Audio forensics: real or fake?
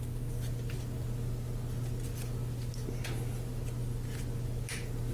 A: real